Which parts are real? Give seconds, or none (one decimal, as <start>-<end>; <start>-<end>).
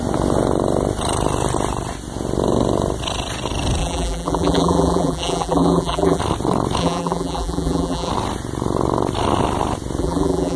0.0-3.8; 6.2-6.8; 8.1-10.0